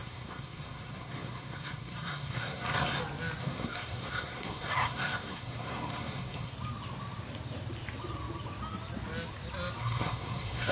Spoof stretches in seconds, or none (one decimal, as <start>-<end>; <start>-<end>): 0.0-3.0; 3.4-6.5; 9.8-10.7